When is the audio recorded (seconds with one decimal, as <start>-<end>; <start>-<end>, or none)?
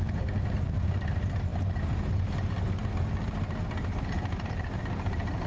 0.0-5.5